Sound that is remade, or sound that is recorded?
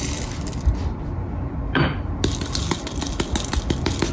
recorded